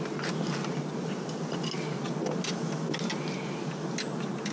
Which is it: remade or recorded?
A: recorded